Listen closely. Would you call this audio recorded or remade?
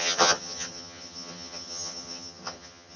remade